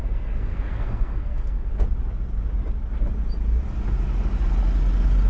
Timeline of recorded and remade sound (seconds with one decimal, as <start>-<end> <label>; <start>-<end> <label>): 0.0-1.7 remade; 1.7-5.3 recorded